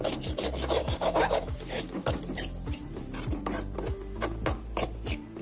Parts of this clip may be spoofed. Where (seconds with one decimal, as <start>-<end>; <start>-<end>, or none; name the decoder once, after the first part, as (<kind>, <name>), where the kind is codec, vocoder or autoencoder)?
0.8-2.2 (codec, DAC)